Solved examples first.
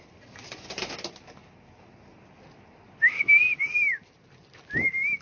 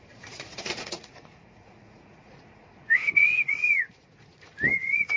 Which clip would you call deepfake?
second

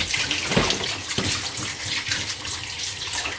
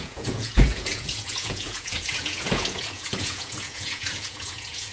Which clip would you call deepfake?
second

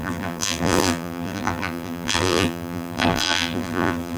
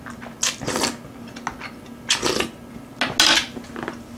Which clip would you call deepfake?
first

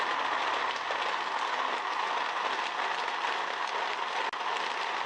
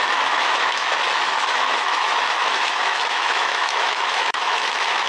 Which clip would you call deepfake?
second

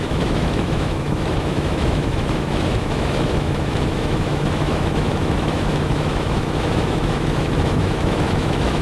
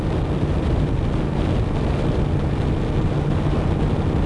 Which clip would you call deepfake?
first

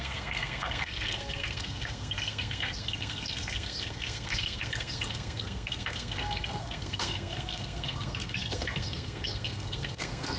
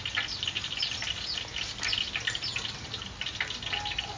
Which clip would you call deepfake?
first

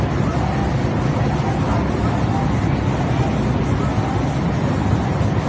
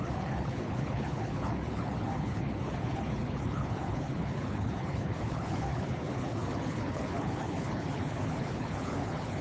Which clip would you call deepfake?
second